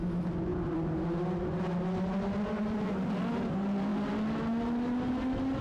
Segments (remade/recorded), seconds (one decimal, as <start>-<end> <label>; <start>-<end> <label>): 0.0-5.6 recorded